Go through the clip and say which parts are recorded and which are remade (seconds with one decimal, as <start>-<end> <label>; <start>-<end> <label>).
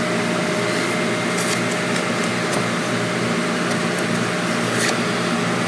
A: 0.0-5.7 recorded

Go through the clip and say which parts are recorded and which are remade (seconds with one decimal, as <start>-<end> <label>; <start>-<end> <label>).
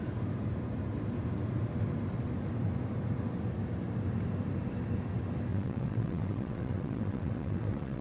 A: 0.0-5.5 recorded; 5.5-8.0 remade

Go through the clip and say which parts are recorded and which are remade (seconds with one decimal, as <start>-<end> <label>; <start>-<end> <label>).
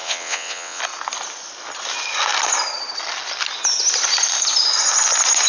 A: 0.0-0.8 remade; 0.8-5.5 recorded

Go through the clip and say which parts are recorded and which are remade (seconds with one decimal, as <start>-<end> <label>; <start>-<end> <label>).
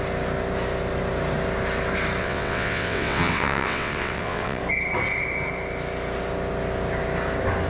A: 0.0-2.2 recorded; 2.2-4.6 remade; 4.6-7.7 recorded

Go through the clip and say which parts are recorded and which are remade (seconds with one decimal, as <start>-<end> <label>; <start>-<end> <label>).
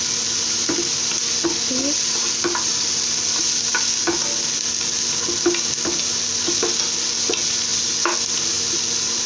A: 0.0-9.3 recorded